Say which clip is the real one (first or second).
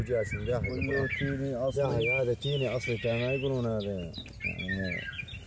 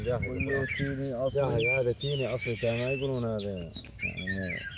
first